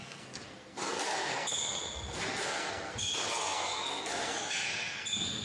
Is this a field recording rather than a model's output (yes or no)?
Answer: no